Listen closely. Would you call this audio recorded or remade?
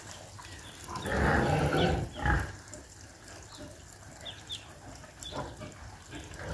recorded